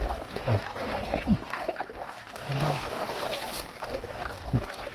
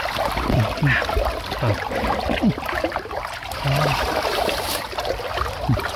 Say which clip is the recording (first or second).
second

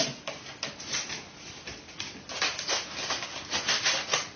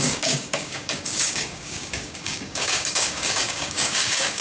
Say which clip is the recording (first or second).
first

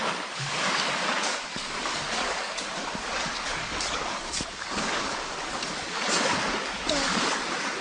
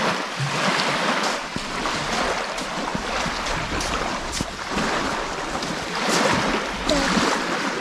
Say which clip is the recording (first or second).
second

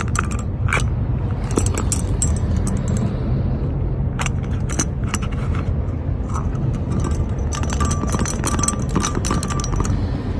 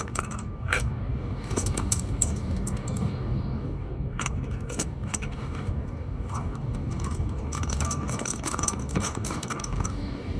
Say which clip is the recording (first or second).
first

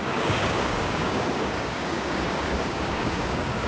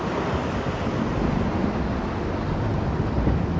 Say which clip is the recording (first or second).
second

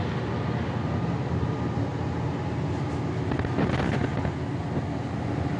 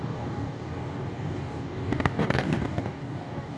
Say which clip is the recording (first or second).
first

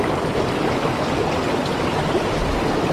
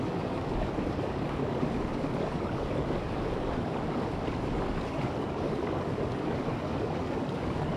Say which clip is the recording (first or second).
first